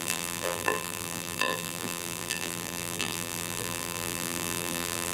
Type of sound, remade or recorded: remade